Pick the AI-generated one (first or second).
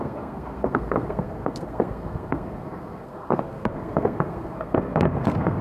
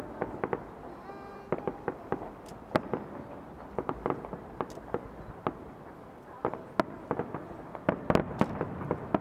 first